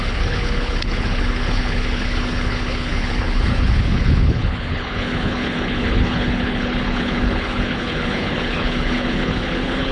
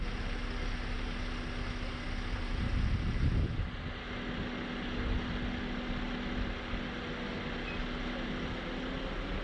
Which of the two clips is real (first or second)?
second